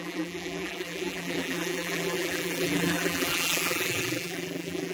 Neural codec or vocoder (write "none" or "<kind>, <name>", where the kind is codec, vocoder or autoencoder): vocoder, BigVGAN v2